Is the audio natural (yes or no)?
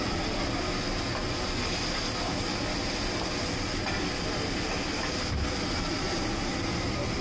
yes